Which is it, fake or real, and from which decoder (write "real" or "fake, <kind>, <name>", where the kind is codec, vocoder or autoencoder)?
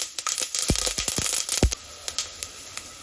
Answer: real